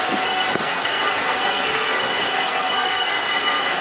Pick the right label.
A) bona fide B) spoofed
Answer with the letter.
B